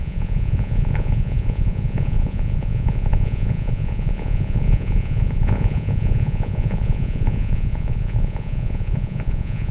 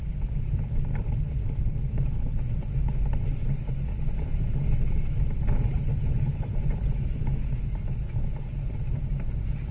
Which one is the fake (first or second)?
first